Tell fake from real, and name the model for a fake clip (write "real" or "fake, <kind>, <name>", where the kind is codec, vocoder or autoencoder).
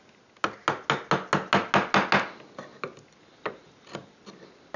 real